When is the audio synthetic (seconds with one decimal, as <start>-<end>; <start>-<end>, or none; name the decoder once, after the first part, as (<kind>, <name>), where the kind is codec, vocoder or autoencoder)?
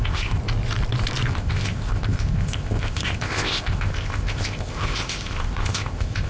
0.0-0.4 (codec, ZipCodec); 1.3-6.3